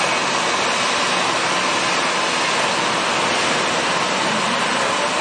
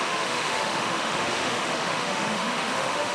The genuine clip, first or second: first